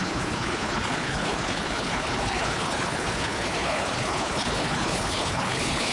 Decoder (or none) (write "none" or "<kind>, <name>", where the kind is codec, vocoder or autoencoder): codec, HILCodec